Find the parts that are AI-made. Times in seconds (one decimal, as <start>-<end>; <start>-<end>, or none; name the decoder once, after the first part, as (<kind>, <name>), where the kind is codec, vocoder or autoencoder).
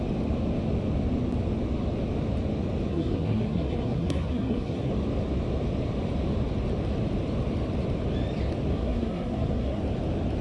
2.9-4.9 (codec, SNAC); 8.7-9.8